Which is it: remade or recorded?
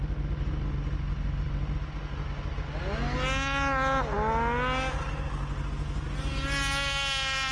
recorded